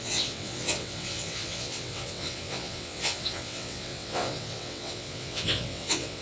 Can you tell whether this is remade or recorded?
remade